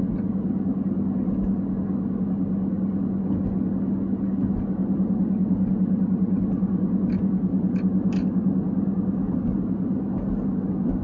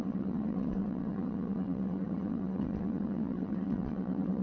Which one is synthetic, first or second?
second